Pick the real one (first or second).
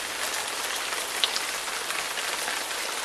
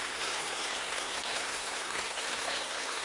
first